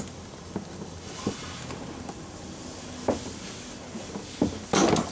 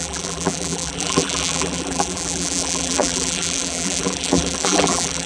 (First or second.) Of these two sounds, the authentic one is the first